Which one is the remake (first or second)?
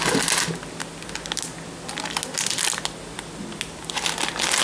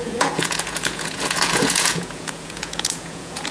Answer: second